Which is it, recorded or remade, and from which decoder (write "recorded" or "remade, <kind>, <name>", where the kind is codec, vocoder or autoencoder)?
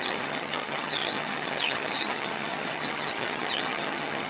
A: remade, vocoder, HiFi-GAN